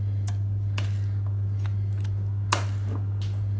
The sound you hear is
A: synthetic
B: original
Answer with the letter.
B